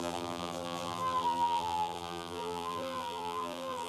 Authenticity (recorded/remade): remade